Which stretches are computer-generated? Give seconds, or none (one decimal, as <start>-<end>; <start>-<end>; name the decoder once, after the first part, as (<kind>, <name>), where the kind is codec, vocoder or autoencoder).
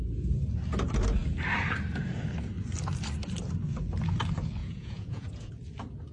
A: 4.6-5.5 (vocoder, Vocos)